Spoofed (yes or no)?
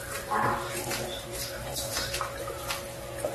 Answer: no